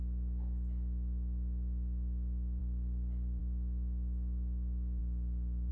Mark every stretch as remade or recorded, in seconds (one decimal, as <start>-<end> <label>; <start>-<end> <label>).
0.0-5.7 recorded